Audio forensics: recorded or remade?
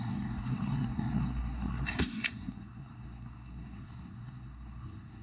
remade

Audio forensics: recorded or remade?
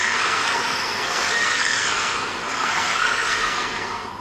remade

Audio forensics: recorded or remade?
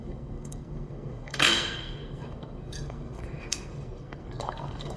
remade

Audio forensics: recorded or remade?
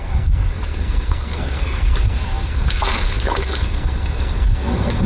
remade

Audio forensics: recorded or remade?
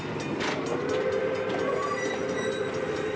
recorded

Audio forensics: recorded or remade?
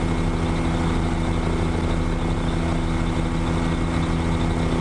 recorded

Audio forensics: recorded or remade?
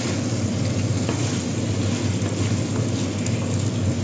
recorded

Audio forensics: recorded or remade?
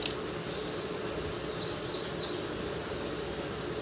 recorded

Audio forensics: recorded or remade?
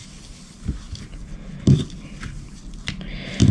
recorded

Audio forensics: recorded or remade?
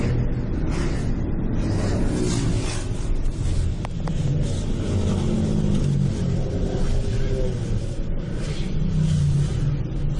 recorded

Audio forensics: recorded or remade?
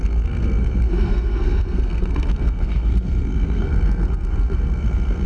remade